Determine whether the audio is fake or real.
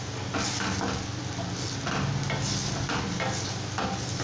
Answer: real